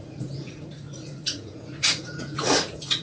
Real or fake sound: fake